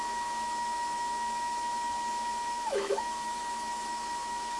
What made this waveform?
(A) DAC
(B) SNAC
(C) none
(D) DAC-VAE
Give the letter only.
D